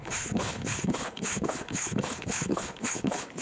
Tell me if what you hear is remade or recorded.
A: remade